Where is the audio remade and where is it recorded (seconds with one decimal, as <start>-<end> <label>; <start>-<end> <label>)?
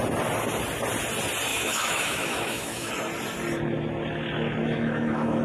0.0-1.5 recorded; 1.5-2.9 remade; 2.9-4.6 recorded; 4.6-5.4 remade